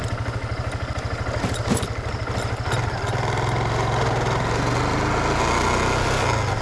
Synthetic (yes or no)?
no